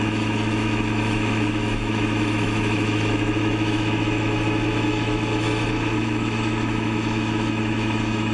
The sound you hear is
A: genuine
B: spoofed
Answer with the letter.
B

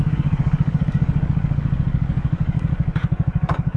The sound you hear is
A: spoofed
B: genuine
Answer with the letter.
A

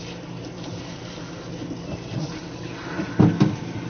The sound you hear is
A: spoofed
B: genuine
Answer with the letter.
B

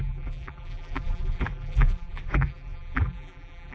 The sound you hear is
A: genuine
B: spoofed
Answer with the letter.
B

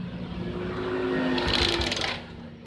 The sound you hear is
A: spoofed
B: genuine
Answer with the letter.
B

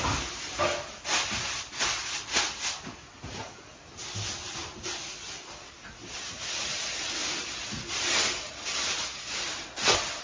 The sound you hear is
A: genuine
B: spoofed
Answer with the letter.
A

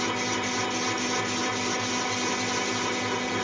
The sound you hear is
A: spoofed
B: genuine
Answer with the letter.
B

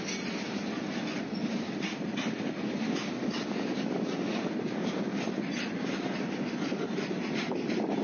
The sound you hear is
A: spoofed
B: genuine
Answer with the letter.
B